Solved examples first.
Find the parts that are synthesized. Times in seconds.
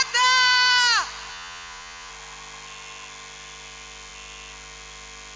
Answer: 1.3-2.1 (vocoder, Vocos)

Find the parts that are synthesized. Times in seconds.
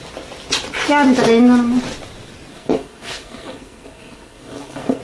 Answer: 2.5-5.0 (codec, SNAC)